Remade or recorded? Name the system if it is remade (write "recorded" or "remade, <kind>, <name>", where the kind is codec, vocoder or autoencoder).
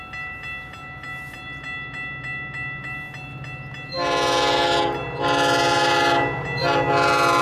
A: recorded